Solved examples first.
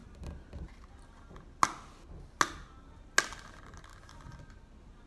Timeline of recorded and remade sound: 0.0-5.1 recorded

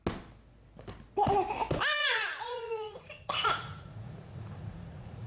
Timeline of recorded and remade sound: 0.0-2.0 recorded; 2.0-5.3 remade

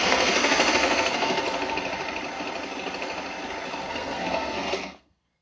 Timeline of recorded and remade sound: 0.0-1.4 remade; 1.4-3.9 recorded; 3.9-5.4 remade

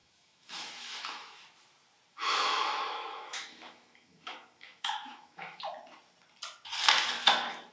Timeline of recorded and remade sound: 0.0-1.4 remade; 1.4-2.1 recorded; 2.1-5.6 remade; 5.6-7.7 recorded

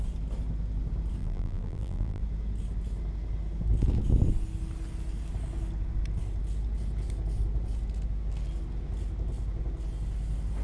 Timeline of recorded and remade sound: 0.0-1.2 recorded; 1.2-2.2 remade; 2.2-10.6 recorded